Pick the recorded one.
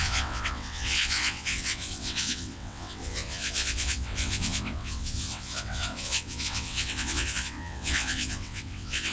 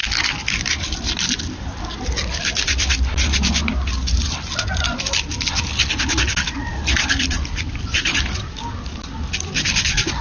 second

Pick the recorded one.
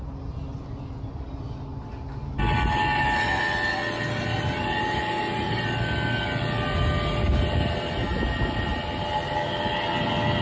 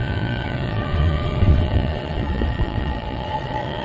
first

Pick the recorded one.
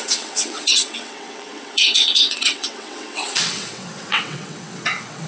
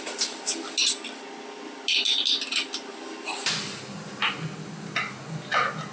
second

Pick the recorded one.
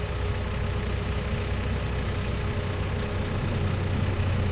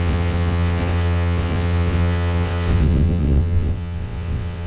first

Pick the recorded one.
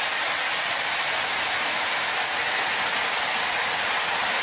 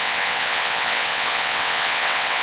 first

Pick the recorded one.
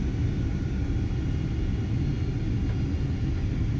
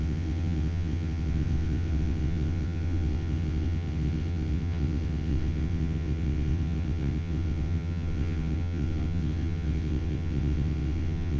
first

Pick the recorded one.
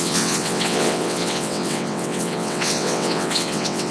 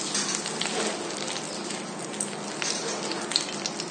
second